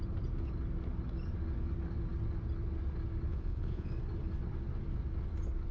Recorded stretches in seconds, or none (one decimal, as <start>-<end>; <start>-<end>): 0.0-3.3; 3.9-5.7

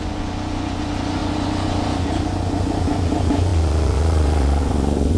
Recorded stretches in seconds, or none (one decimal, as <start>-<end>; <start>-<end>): none

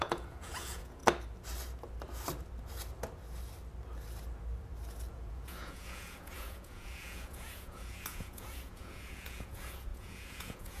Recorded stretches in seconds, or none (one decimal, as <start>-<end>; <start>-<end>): 1.0-5.1

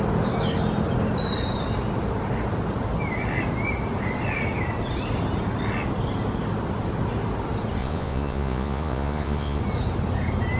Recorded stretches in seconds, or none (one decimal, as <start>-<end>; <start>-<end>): 0.0-7.8; 9.6-10.6

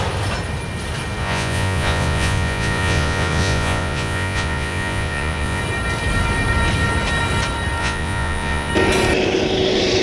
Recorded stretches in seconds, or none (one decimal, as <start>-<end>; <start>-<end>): 0.0-1.2; 5.6-7.8; 8.7-10.0